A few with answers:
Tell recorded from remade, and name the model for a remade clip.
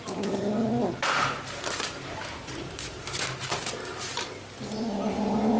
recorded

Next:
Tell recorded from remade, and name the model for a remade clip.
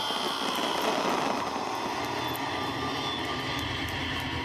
recorded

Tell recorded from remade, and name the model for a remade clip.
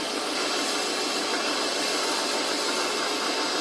recorded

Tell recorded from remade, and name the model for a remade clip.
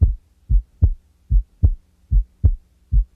recorded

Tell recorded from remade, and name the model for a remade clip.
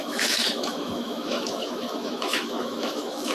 remade, autoencoder, DAC-VAE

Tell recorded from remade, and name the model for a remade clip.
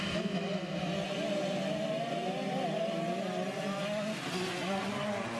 recorded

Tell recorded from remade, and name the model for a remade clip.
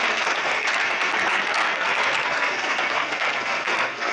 remade, codec, SNAC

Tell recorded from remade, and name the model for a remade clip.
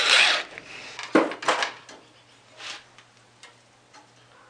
recorded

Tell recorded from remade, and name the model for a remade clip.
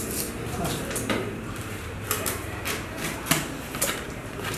remade, vocoder, BigVGAN v2